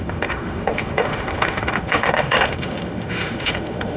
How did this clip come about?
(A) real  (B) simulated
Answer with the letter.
B